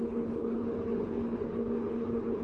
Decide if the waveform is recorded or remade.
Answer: remade